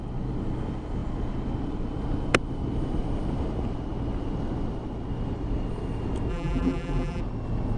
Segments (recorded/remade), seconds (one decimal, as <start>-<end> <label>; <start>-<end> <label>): 0.0-6.3 recorded; 6.3-7.2 remade; 7.2-7.8 recorded